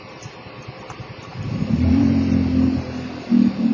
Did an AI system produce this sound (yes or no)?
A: yes